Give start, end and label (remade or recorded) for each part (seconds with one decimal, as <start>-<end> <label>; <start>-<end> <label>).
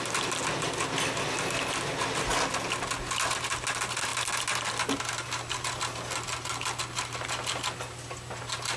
0.0-8.8 recorded